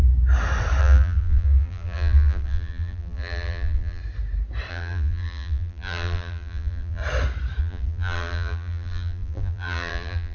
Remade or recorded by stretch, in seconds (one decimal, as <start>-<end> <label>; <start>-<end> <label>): 0.0-0.8 recorded; 0.8-4.0 remade; 4.0-4.7 recorded; 4.7-7.0 remade; 7.0-7.6 recorded; 7.6-10.3 remade